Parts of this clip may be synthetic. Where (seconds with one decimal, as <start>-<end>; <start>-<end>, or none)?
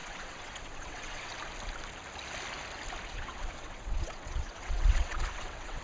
0.0-1.3; 3.1-5.8